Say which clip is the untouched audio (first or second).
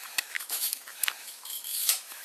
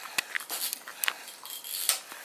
second